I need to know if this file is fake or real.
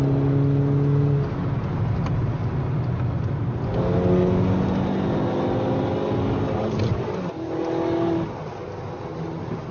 real